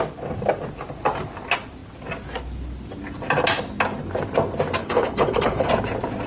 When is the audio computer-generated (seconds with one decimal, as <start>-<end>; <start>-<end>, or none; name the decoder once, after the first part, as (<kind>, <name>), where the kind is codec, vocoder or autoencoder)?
4.8-5.7 (codec, HILCodec)